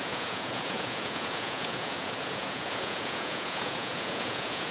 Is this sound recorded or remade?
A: remade